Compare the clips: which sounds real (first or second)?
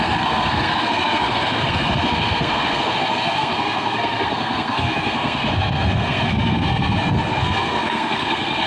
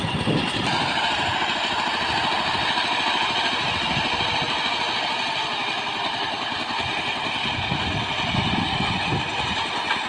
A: second